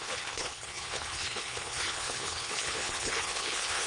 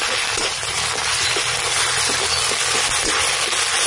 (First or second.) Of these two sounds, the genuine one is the second